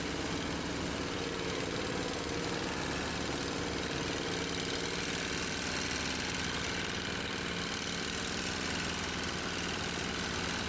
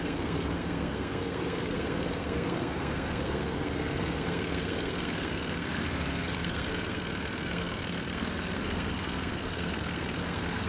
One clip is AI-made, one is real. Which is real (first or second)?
first